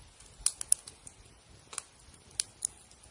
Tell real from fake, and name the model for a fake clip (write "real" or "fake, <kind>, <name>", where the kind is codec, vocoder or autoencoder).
real